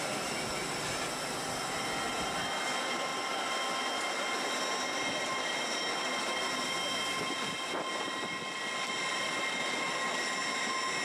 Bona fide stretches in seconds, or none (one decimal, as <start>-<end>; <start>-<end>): 0.0-11.0